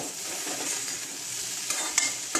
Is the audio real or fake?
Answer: real